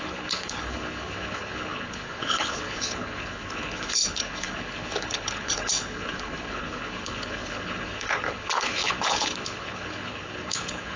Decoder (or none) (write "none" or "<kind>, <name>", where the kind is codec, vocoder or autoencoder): codec, HILCodec